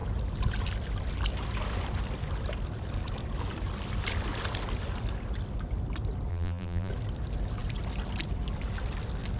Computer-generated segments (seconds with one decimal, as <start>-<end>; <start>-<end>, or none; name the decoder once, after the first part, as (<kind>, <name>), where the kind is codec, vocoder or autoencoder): 6.3-6.9 (vocoder, BigVGAN v2)